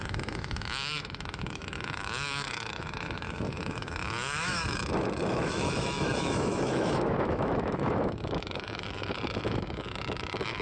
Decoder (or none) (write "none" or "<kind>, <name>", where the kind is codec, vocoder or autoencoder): autoencoder, DAC-VAE